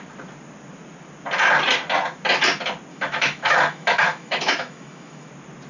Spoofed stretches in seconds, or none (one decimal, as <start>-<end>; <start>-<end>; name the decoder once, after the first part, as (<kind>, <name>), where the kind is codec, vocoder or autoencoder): 2.9-5.3 (autoencoder, DAC-VAE)

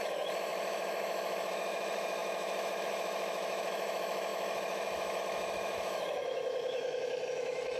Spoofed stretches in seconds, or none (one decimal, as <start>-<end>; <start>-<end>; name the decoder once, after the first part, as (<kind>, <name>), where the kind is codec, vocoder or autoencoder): 0.0-7.8 (autoencoder, DAC-VAE)

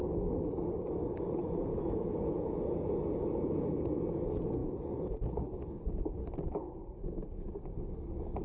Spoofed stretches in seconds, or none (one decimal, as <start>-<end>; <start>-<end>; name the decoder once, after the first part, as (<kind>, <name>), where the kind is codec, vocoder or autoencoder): 1.7-2.4 (autoencoder, DAC-VAE)

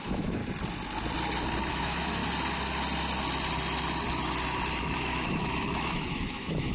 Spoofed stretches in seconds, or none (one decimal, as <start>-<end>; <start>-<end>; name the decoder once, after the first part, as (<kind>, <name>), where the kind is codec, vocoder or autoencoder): 0.0-0.4 (autoencoder, DAC-VAE); 1.7-2.2; 4.8-6.7

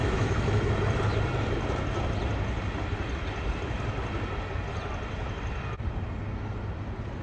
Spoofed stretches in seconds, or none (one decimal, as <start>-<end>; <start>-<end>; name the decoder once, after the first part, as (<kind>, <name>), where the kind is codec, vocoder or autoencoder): 0.0-0.7 (autoencoder, DAC-VAE)

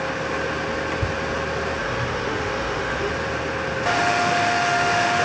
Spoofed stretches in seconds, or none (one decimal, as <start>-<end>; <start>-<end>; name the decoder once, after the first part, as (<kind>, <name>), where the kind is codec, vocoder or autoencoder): 1.8-3.1 (autoencoder, DAC-VAE); 4.0-5.2

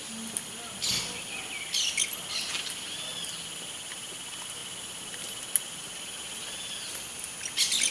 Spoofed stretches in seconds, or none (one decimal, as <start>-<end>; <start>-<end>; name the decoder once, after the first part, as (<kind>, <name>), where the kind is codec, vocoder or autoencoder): none